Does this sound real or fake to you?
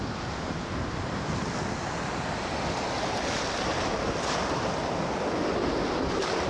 real